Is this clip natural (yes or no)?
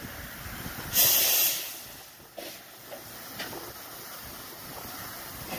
yes